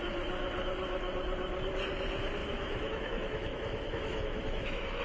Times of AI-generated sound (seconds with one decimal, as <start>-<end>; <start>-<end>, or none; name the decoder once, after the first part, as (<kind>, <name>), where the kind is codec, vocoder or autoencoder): 2.4-5.0 (autoencoder, DAC-VAE)